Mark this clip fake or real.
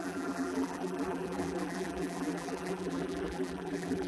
fake